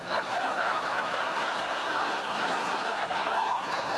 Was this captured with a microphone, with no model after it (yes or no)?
no